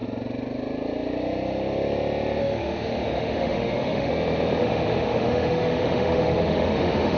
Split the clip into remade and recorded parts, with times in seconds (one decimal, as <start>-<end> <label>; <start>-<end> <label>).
0.0-2.4 recorded; 2.4-4.1 remade; 4.1-4.6 recorded; 4.6-7.2 remade

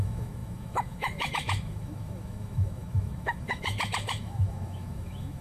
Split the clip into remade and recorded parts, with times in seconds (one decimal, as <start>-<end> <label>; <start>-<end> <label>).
0.0-5.4 remade

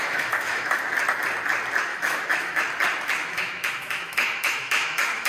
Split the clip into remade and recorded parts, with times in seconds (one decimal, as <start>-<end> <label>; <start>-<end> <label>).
0.0-0.8 remade; 0.8-1.9 recorded; 1.9-2.6 remade; 2.6-3.2 recorded; 3.2-5.3 remade

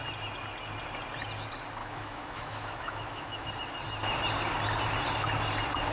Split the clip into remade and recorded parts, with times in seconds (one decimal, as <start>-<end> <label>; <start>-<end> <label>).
0.0-1.8 recorded; 1.8-3.5 remade; 3.5-5.9 recorded

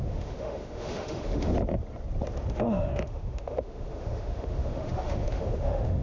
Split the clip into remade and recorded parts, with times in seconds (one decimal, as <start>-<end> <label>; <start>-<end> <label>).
0.0-1.5 remade; 1.5-2.5 recorded; 2.5-6.0 remade

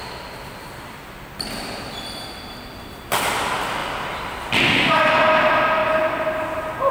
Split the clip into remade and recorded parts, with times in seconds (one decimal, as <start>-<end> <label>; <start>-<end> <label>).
0.0-6.9 recorded